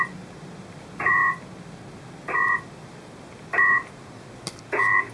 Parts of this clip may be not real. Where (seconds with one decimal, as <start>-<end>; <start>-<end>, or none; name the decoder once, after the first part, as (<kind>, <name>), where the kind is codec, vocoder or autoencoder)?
none